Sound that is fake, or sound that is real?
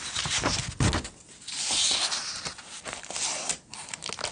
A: real